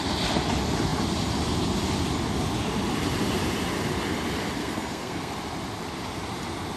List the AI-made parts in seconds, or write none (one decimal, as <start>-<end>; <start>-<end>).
4.6-5.3